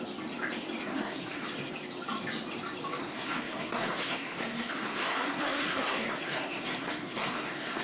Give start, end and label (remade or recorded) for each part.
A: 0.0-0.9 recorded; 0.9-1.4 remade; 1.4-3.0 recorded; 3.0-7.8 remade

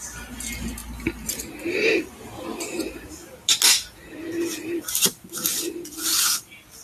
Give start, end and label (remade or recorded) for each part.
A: 0.0-6.8 recorded